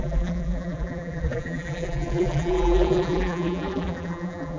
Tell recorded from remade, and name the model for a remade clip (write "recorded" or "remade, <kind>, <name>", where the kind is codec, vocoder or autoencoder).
remade, vocoder, BigVGAN v2